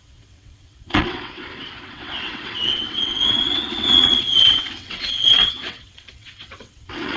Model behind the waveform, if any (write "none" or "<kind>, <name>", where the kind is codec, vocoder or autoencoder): vocoder, WaveNeXt